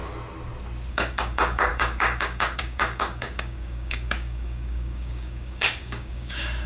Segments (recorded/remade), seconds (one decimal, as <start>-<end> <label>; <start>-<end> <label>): 0.0-0.9 recorded; 0.9-6.7 remade